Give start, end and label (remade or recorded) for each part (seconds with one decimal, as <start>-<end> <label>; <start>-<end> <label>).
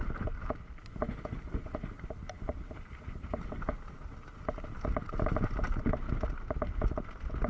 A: 0.0-7.5 recorded